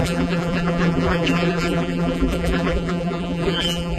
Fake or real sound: fake